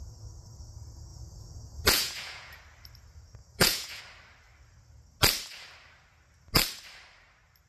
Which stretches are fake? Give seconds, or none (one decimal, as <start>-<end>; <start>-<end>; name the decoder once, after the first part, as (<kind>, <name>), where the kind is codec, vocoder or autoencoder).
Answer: 1.1-2.6 (vocoder, Vocos); 3.4-4.0

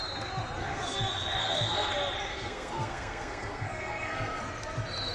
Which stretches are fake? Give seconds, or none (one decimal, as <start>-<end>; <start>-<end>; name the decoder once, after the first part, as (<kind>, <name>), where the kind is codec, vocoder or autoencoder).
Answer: 0.6-1.9 (codec, SNAC); 2.3-4.4

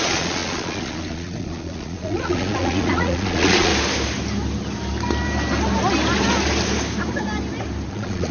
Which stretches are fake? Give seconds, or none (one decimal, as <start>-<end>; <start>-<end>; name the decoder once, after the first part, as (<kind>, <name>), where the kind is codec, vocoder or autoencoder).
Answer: 0.0-3.7 (vocoder, Vocos); 7.9-8.3

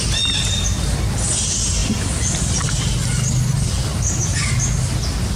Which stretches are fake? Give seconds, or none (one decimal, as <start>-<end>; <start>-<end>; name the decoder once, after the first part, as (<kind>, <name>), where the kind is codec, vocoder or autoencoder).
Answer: none

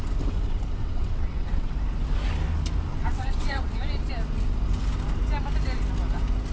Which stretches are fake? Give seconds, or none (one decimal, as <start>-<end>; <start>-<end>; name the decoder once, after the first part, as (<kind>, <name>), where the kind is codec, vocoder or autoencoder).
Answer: 0.8-1.7 (vocoder, WaveNeXt); 2.9-3.8